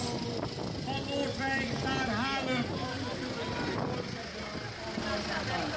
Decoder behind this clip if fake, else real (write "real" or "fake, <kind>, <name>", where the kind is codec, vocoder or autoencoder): real